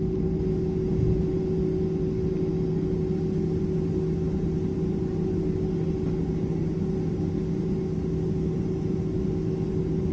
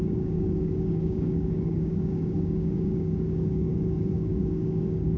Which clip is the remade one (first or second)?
second